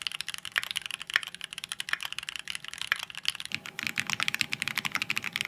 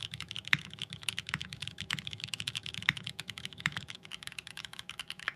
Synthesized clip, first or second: second